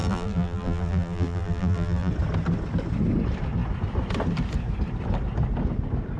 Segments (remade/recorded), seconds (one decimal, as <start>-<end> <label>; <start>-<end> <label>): 0.0-2.1 remade; 2.1-6.2 recorded